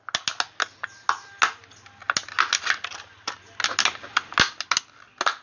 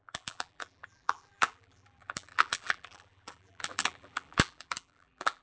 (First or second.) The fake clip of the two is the second